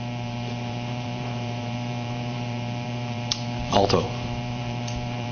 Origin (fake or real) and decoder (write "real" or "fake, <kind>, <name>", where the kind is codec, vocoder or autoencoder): fake, vocoder, BigVGAN v2